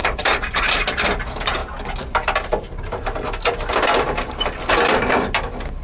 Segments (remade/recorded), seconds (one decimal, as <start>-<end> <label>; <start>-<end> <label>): 0.0-5.8 recorded